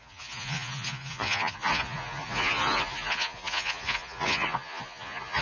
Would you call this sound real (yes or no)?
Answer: no